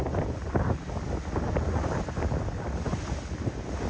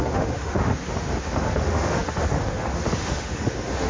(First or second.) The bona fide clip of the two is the first